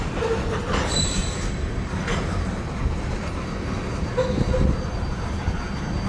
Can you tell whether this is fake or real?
real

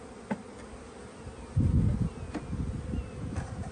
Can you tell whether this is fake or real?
real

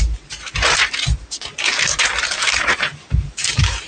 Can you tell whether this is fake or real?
fake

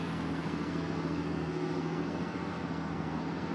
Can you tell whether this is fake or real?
fake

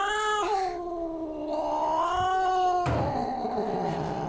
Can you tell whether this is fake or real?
real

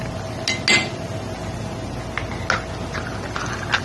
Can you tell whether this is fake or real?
real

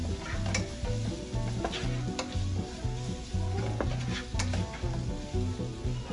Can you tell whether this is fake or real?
real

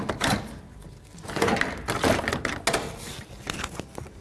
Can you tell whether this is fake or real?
real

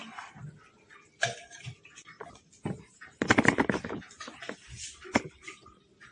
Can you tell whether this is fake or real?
real